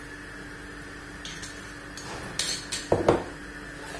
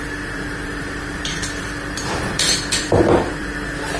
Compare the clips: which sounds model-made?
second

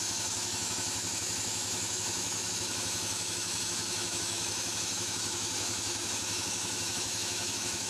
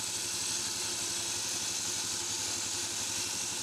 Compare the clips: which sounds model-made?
first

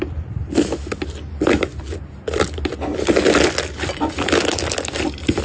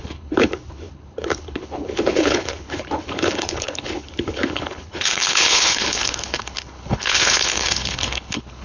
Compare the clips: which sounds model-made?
second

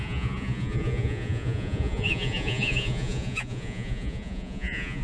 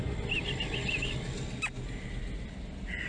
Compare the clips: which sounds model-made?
first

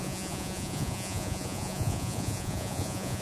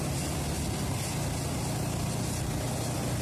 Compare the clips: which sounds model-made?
first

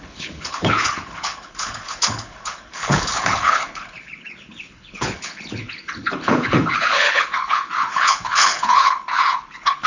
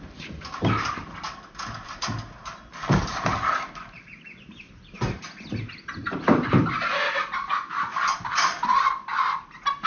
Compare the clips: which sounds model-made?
first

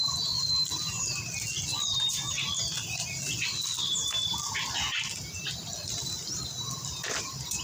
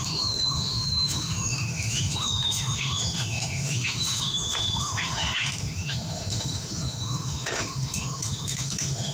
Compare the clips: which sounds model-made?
second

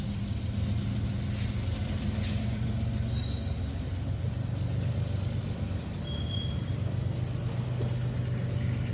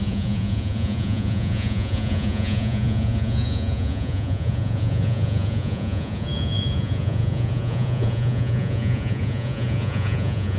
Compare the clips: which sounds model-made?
second